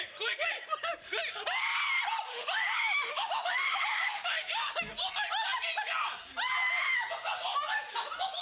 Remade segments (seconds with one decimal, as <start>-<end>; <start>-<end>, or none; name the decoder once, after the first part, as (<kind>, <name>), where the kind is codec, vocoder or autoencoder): 2.3-4.7 (autoencoder, DAC-VAE)